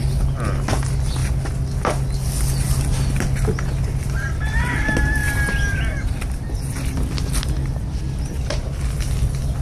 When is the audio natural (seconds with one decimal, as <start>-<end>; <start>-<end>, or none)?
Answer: 0.0-9.6